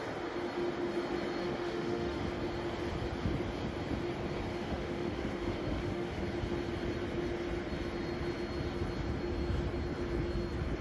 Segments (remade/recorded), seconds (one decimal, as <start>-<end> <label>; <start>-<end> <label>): 0.0-1.4 recorded; 1.4-2.2 remade; 2.2-4.5 recorded; 4.5-6.2 remade; 6.2-10.8 recorded